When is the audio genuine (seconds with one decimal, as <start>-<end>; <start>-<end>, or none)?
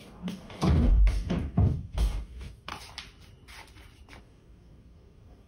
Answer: 2.7-4.2